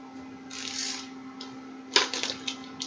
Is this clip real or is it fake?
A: real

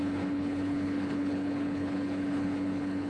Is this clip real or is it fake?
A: fake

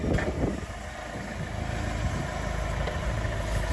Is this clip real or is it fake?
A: real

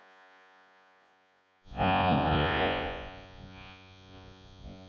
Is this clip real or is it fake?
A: fake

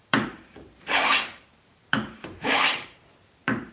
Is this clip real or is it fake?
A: fake